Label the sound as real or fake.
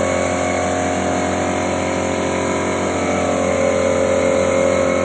real